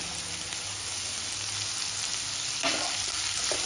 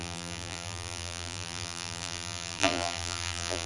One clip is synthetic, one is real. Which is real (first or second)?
first